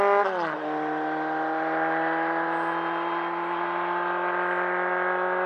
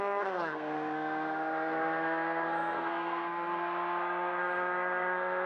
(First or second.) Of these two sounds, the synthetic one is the second